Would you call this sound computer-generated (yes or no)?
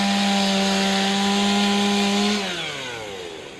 no